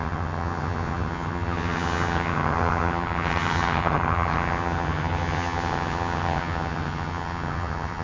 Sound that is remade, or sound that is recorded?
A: remade